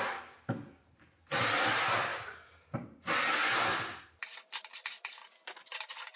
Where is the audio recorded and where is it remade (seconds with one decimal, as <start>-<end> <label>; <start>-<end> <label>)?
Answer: 0.0-6.2 recorded